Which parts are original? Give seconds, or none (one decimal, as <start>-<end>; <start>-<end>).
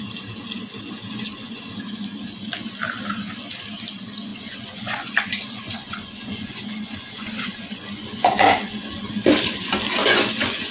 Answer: 0.0-1.1; 1.6-4.3; 9.1-10.0